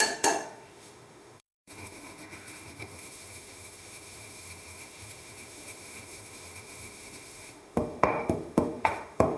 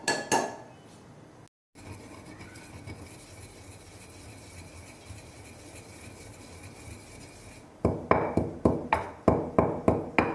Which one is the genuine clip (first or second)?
second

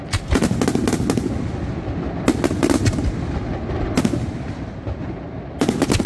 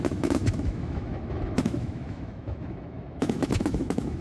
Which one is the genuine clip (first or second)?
first